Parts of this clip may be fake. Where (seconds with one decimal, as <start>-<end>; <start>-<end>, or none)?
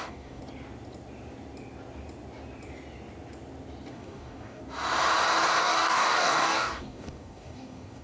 0.0-0.4; 3.9-4.6; 5.6-8.0